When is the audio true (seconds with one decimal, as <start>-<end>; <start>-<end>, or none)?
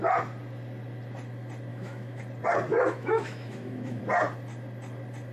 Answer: 0.0-1.7; 2.2-2.7; 4.0-5.3